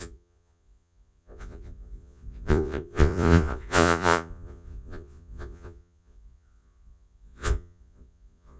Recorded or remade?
remade